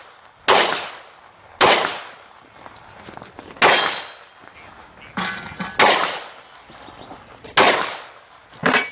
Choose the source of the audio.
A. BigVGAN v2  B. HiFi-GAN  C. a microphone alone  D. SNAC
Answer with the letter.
C